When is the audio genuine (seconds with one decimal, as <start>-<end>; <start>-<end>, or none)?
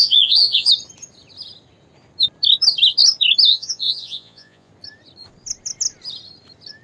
0.7-3.5; 4.7-6.8